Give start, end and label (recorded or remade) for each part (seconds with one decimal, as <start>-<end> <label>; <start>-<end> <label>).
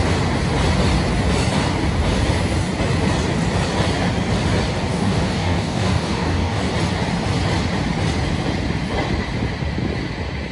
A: 0.0-4.9 recorded; 4.9-6.7 remade; 6.7-10.5 recorded